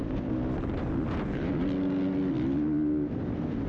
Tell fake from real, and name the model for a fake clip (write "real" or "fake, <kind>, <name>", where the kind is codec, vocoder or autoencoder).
real